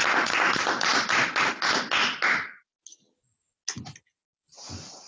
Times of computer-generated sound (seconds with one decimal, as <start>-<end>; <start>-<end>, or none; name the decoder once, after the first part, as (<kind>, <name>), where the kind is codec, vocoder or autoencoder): none